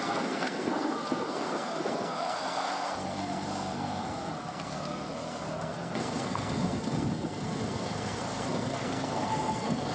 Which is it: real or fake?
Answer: fake